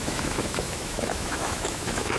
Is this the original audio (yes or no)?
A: no